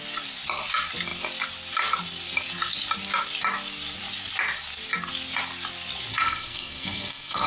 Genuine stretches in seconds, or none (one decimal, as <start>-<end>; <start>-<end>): 0.0-6.1